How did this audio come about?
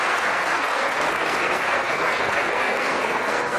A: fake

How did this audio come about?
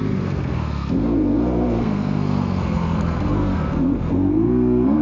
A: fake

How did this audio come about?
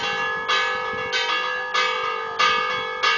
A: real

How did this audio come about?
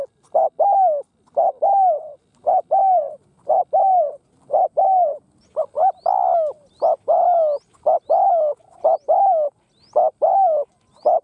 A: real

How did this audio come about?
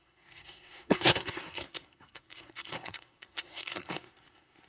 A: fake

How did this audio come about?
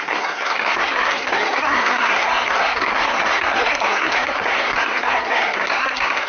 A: fake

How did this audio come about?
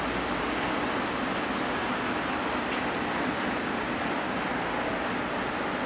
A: real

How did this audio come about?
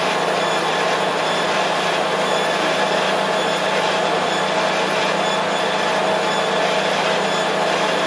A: real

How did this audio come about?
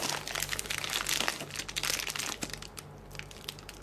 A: real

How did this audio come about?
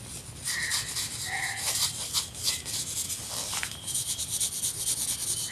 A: real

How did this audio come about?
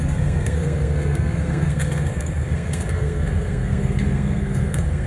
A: fake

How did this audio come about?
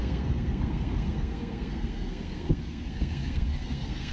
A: fake